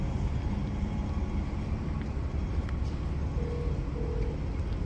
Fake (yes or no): no